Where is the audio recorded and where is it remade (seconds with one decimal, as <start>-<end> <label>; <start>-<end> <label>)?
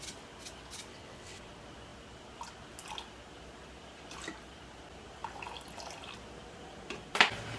0.0-0.9 recorded; 0.9-1.4 remade; 1.4-7.6 recorded